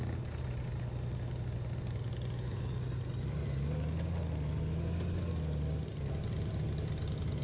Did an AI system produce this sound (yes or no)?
no